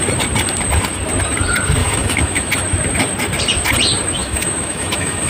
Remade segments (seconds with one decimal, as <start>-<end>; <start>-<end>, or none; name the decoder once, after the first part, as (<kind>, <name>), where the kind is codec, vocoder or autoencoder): 1.8-2.5 (autoencoder, DAC-VAE); 4.2-5.3